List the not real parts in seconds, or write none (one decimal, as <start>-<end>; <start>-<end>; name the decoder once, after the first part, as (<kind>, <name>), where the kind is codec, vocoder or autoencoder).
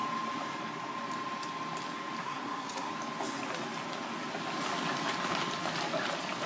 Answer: 2.2-2.9 (codec, SNAC)